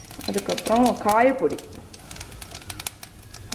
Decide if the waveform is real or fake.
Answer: real